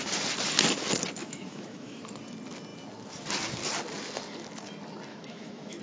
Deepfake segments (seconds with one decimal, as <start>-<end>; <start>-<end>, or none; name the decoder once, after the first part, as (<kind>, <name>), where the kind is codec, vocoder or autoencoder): 1.2-2.0 (autoencoder, DAC-VAE); 5.1-5.8